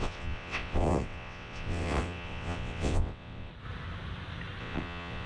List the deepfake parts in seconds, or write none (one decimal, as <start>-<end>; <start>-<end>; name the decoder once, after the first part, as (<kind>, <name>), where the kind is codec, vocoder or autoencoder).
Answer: 0.0-3.5 (vocoder, WaveNeXt); 4.6-5.3